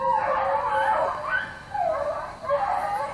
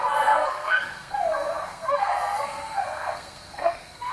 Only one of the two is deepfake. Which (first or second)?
second